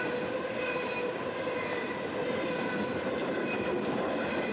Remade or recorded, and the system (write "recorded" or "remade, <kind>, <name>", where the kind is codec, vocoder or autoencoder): remade, vocoder, BigVGAN v2